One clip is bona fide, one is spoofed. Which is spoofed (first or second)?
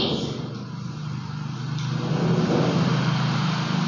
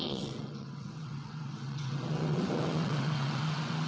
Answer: second